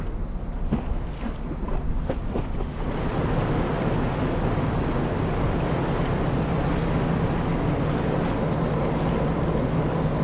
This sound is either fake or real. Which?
real